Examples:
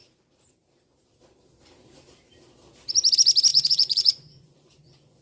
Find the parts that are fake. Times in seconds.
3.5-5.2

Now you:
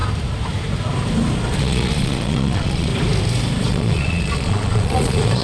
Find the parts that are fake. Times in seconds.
1.6-2.9; 3.7-5.4

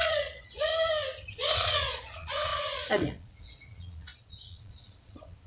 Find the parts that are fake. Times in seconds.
0.0-0.7; 1.3-5.5

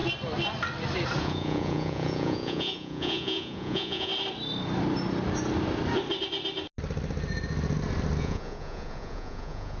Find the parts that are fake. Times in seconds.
1.2-4.1; 8.2-9.8

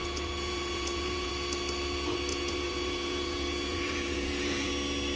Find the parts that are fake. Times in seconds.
0.0-1.3; 2.3-4.7